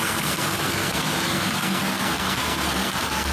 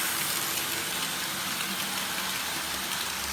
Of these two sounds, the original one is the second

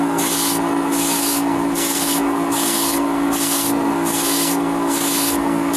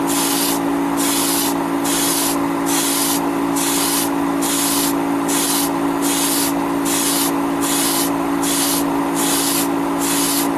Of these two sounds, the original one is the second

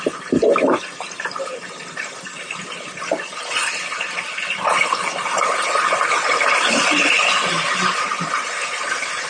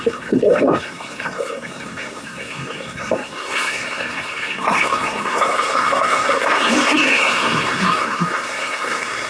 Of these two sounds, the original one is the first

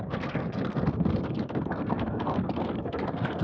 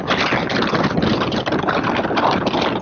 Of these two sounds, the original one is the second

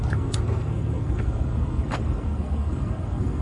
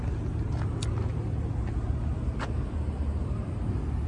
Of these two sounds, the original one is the second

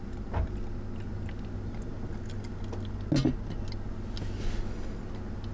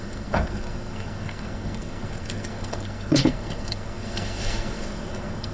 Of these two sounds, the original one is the first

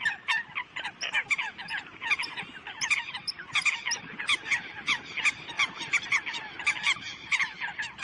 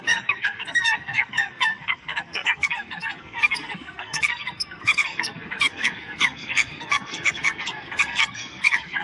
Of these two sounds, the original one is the first